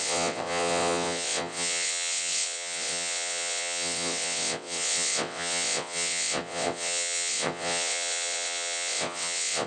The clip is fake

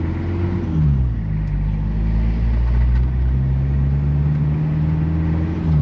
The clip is real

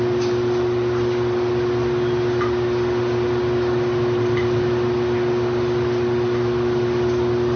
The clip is real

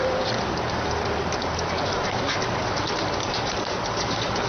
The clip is fake